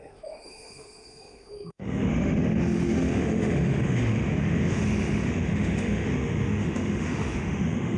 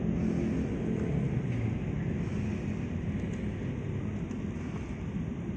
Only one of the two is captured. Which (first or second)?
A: second